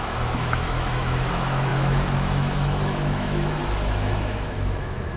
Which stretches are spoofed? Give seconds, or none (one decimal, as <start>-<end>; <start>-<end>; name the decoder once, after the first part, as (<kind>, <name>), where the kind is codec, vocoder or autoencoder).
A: 0.0-5.2 (autoencoder, DAC-VAE)

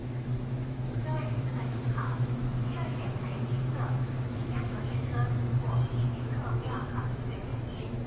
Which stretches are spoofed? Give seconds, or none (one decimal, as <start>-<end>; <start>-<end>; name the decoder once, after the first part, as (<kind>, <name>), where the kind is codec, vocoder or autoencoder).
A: 0.0-8.1 (autoencoder, DAC-VAE)

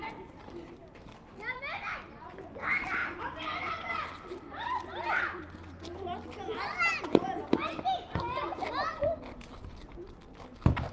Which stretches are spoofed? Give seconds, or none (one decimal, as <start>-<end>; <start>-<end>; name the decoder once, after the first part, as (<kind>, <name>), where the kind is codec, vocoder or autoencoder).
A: none

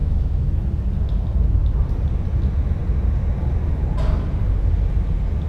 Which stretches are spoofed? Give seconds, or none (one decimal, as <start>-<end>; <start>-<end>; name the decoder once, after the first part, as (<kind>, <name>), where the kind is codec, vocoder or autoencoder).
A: 0.0-0.6 (autoencoder, DAC-VAE)